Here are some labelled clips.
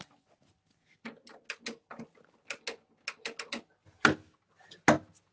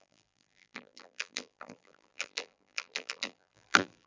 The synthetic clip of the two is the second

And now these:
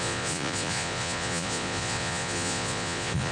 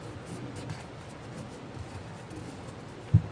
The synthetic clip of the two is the first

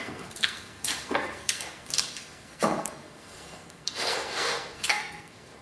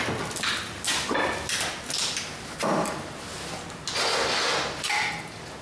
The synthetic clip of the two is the first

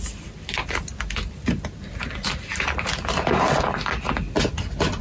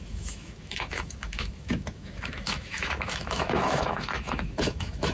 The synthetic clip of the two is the second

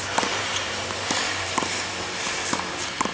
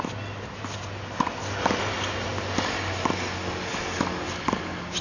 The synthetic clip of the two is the first